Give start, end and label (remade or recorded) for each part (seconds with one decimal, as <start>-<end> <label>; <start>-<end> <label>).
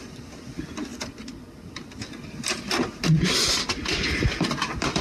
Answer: 0.0-0.9 remade; 0.9-3.9 recorded; 3.9-5.0 remade